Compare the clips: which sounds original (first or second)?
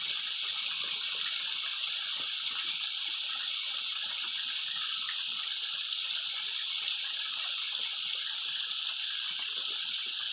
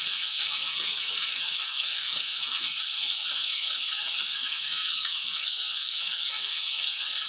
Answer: first